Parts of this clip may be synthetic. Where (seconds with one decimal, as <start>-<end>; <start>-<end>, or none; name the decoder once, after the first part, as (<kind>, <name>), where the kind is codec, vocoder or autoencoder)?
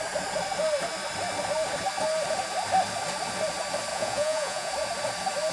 3.9-4.7 (vocoder, Vocos)